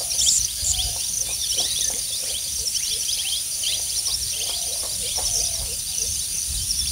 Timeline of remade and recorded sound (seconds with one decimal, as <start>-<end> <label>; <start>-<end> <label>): 0.0-4.1 remade; 4.1-4.7 recorded; 4.7-6.9 remade